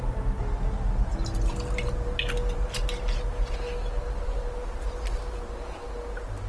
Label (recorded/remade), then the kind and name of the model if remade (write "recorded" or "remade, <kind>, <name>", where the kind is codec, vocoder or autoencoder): recorded